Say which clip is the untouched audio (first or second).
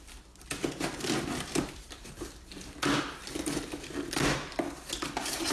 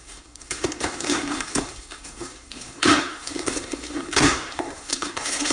first